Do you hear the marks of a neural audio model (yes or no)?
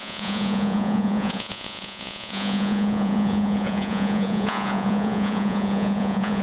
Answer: yes